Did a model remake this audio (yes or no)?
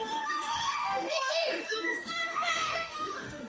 yes